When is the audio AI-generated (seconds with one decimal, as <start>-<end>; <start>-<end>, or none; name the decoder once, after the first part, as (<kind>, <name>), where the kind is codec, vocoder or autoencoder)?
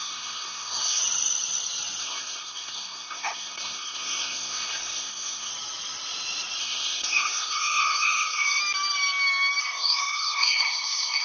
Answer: 0.0-1.0 (codec, SNAC); 2.0-5.5; 6.6-8.6; 9.6-11.2